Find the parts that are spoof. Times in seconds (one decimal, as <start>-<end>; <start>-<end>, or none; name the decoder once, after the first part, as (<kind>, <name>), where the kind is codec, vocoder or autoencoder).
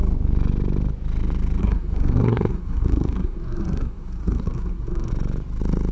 1.6-5.1 (codec, SNAC)